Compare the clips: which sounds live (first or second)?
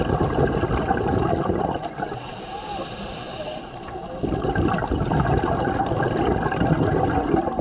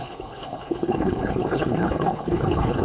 first